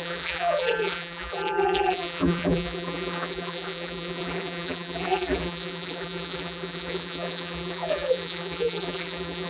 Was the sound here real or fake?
fake